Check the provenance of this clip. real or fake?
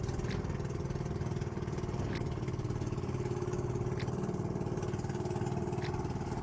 real